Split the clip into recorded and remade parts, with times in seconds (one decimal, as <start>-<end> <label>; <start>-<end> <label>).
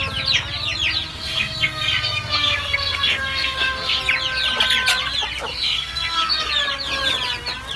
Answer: 0.0-1.1 recorded; 1.1-4.0 remade; 4.0-5.5 recorded; 5.5-6.5 remade; 6.5-7.8 recorded